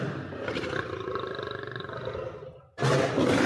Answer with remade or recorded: recorded